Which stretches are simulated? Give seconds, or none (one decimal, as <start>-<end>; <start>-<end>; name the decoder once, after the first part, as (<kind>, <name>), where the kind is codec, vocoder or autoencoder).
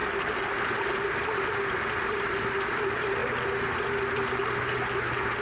none